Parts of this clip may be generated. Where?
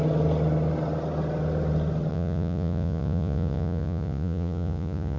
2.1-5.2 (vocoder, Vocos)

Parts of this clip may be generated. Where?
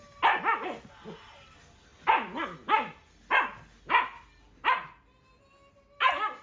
none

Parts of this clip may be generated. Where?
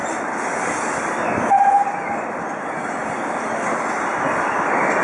none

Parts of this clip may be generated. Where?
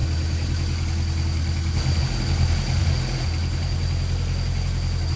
none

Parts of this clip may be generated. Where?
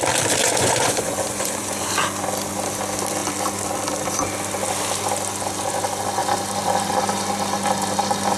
0.4-1.9 (vocoder, Vocos)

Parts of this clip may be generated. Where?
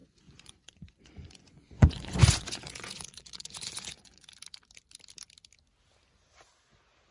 0.0-4.3 (vocoder, Vocos)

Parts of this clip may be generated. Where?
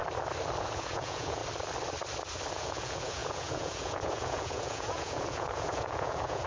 0.6-1.4 (vocoder, Vocos); 2.5-6.5